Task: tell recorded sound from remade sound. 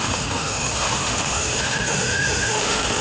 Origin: remade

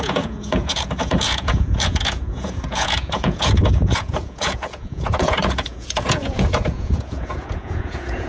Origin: remade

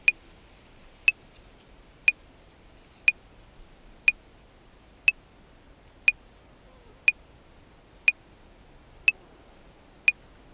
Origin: recorded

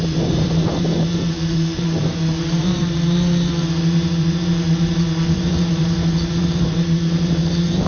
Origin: remade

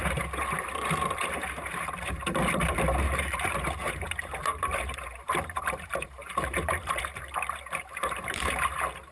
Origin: remade